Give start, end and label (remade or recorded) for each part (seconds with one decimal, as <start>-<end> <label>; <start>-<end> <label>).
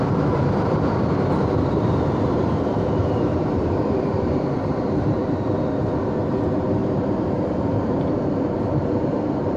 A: 0.0-5.2 remade; 5.2-6.2 recorded; 6.2-9.6 remade